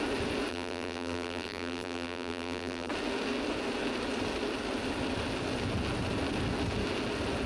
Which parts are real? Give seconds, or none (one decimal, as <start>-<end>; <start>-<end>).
0.0-0.5; 2.9-7.5

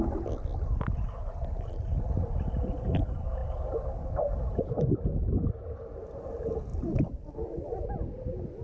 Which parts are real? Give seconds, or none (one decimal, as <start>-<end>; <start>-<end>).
0.0-6.7; 7.3-8.6